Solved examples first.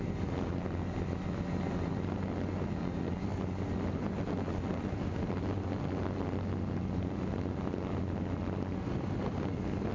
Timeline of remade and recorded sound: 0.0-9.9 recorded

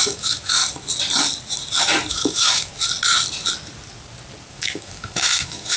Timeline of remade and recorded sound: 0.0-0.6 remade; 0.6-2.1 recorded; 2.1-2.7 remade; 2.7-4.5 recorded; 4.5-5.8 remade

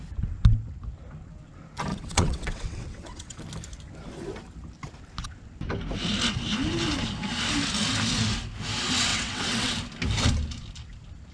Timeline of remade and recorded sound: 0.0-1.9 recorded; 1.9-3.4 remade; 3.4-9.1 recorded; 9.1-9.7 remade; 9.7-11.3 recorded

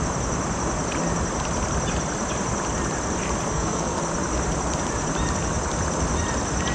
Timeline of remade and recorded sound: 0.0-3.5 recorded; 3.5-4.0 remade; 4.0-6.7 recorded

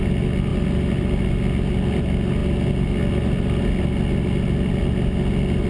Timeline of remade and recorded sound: 0.0-5.7 recorded

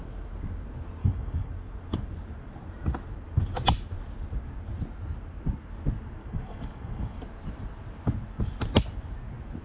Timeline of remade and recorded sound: 0.0-1.0 recorded; 1.0-1.5 remade; 1.5-6.2 recorded; 6.2-7.2 remade; 7.2-9.6 recorded